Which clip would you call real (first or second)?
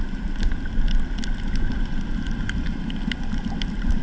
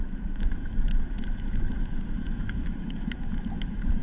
first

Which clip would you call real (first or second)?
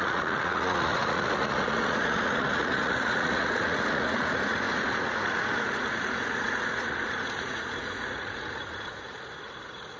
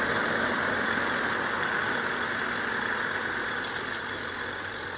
second